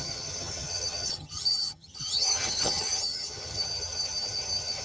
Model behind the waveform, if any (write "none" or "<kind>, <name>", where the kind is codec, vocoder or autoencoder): vocoder, HiFi-GAN